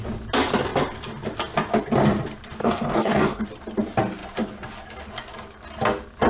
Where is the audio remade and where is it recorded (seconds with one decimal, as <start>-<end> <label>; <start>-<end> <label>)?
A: 0.0-2.6 recorded; 2.6-3.4 remade; 3.4-6.3 recorded